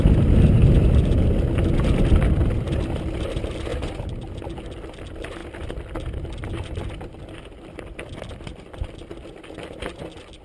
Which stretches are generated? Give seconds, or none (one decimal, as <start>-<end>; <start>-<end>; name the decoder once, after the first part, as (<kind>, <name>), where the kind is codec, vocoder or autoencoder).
none